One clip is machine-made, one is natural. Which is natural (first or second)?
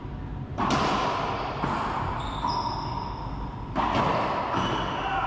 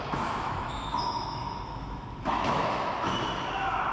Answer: first